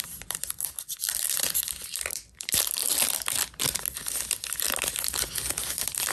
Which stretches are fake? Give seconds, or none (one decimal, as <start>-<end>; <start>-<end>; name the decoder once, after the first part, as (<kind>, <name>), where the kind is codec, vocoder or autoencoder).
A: 0.0-2.8 (vocoder, BigVGAN v2); 5.5-6.1